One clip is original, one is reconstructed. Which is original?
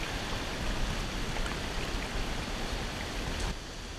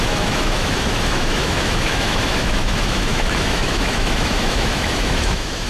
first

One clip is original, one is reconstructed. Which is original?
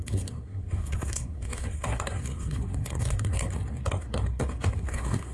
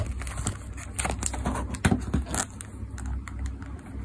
second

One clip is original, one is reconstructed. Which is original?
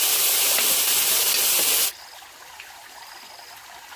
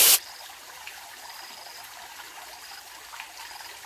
first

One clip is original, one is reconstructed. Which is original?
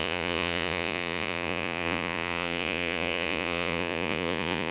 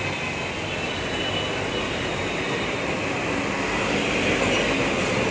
second